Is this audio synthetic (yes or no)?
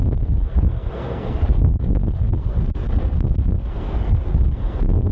yes